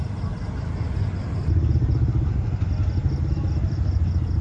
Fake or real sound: real